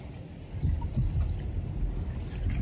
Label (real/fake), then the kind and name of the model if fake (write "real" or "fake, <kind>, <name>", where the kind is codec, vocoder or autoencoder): real